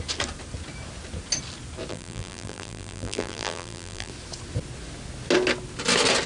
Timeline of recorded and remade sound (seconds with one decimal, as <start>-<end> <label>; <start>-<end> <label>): 0.0-1.9 recorded; 1.9-4.1 remade; 4.1-6.3 recorded